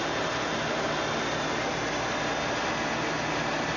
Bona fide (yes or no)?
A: yes